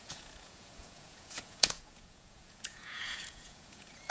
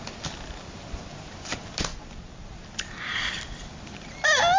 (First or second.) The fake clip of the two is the first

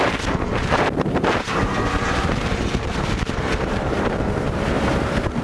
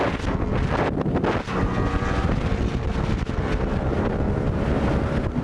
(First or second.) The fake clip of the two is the first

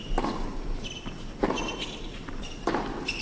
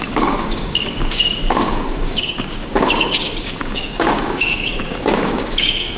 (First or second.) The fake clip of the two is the second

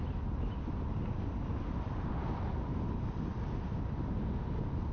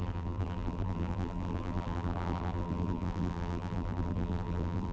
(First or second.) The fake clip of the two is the second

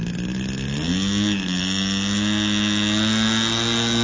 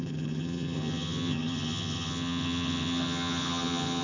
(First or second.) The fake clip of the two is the second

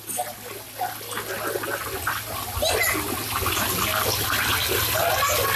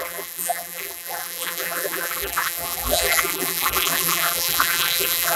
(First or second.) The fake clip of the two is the second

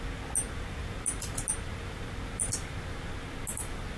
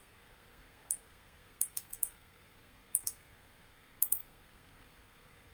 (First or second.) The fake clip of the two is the second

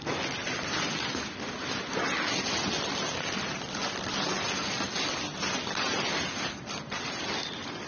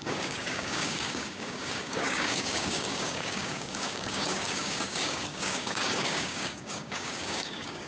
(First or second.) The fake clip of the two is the second